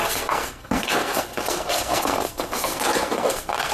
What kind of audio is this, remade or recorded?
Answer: remade